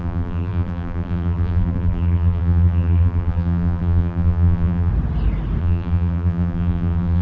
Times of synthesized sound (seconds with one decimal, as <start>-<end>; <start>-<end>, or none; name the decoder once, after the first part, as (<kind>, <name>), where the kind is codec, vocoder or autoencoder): 0.0-4.9 (vocoder, BigVGAN v2); 5.6-7.2